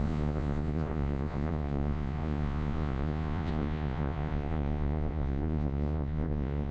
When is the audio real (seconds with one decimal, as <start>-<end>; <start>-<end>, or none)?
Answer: none